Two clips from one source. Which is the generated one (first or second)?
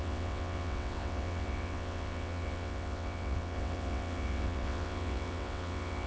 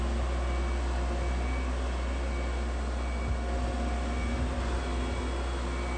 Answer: first